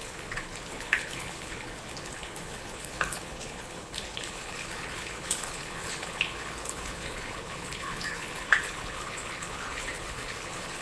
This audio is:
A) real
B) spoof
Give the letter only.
B